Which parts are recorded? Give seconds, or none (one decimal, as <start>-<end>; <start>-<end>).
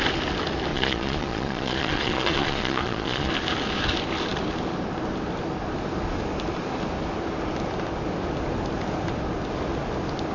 0.0-0.7; 3.3-10.3